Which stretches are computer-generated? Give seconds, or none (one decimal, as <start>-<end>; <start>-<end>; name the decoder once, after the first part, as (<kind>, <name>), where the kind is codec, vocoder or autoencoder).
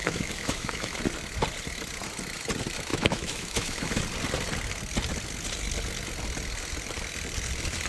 0.0-1.0 (autoencoder, DAC-VAE); 2.9-4.0